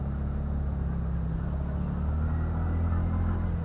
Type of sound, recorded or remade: recorded